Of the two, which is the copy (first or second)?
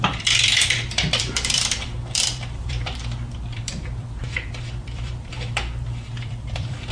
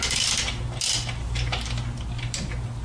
first